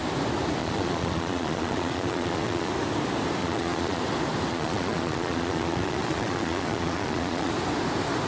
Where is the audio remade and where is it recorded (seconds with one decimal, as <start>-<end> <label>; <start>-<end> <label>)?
0.0-0.6 recorded; 0.6-2.7 remade; 2.7-3.4 recorded; 3.4-4.0 remade; 4.0-4.5 recorded; 4.5-7.5 remade; 7.5-8.3 recorded